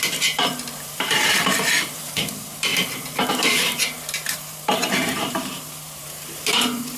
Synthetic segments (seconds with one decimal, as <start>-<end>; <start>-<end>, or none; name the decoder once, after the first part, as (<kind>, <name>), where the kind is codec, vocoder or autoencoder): 0.0-2.7 (vocoder, BigVGAN v2); 3.3-7.0